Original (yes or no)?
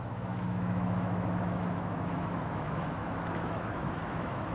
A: no